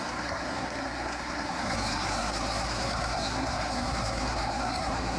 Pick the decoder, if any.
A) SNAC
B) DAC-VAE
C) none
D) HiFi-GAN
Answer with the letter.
A